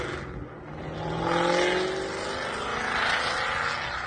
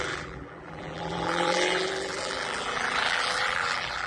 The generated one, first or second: second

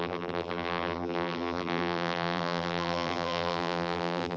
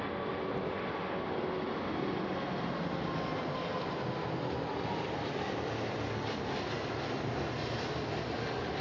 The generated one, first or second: first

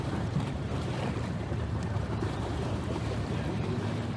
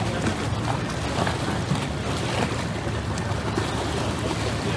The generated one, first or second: first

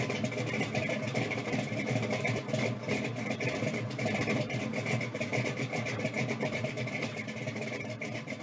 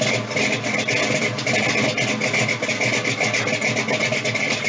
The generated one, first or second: first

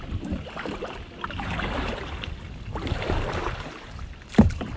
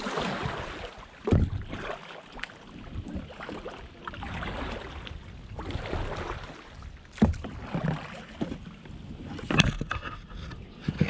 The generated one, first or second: first